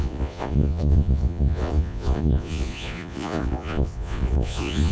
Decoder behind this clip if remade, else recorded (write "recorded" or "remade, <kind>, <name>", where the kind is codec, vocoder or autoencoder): remade, vocoder, Vocos